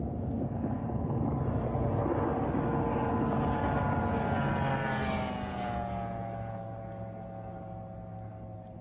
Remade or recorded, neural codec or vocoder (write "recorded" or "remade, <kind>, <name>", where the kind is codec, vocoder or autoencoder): recorded